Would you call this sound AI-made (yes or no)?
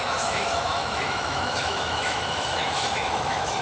yes